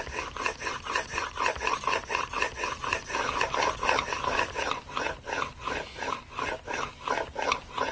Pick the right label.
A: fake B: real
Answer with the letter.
B